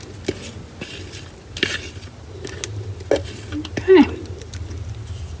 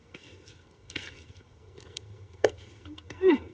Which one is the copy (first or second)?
second